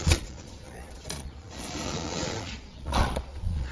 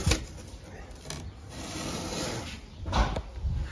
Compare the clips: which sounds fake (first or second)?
first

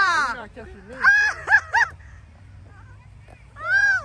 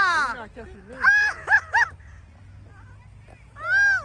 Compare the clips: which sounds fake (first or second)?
first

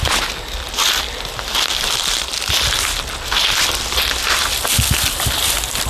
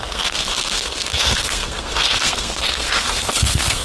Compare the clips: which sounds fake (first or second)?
second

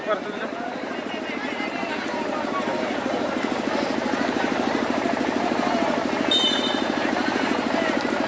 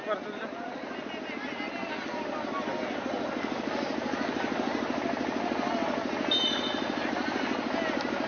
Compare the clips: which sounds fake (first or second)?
first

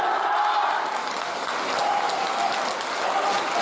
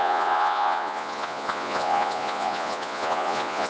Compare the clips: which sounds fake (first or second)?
second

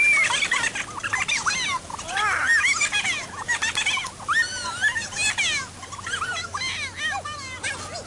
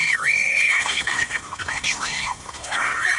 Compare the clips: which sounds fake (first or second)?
second